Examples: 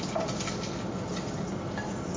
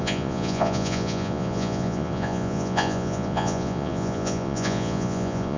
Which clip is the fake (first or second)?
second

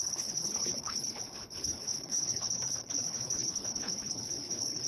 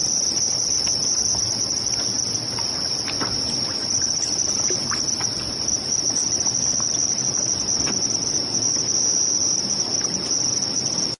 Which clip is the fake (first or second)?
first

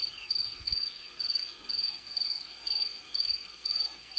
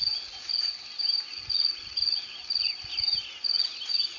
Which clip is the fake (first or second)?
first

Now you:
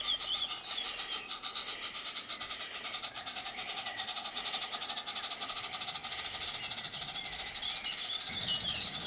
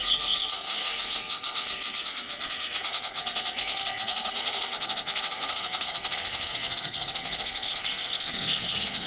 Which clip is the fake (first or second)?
second